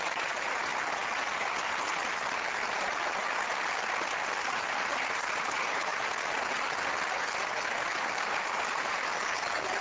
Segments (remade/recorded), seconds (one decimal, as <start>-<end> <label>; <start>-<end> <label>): 0.0-0.7 remade; 0.7-4.4 recorded; 4.4-5.9 remade; 5.9-8.0 recorded; 8.0-9.1 remade; 9.1-9.8 recorded